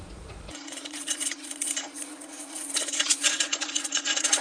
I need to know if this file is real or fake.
fake